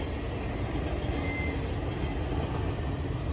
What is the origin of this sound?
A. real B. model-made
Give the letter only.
A